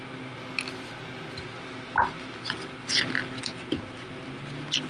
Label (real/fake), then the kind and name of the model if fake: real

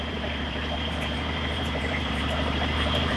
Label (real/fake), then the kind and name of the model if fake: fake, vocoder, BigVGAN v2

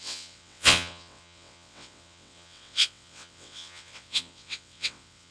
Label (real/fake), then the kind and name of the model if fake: fake, vocoder, WaveNeXt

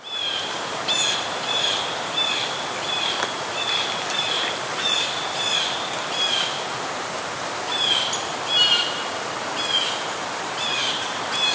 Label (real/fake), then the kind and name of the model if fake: fake, vocoder, BigVGAN v2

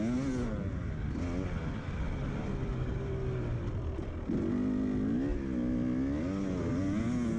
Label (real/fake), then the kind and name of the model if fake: real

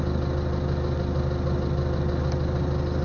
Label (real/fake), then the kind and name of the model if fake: real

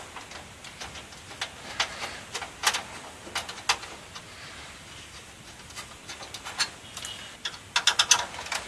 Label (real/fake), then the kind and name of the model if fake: real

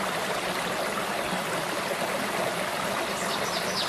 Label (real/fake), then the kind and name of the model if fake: real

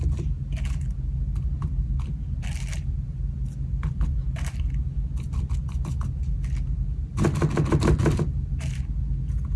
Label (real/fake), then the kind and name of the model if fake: real